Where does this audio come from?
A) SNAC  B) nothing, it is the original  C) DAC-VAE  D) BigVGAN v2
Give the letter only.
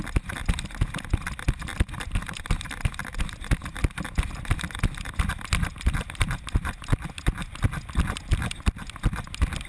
B